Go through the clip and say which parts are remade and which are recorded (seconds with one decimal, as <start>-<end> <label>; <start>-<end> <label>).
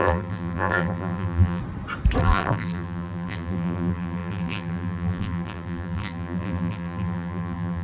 0.0-1.6 remade; 1.6-2.2 recorded; 2.2-7.8 remade